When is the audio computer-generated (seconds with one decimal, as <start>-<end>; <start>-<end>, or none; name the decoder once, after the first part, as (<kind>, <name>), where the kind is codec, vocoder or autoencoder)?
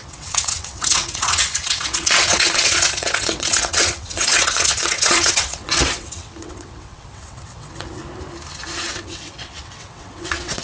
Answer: 0.0-8.0 (vocoder, WaveNeXt); 8.9-10.6